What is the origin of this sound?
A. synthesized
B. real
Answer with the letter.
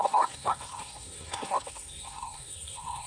A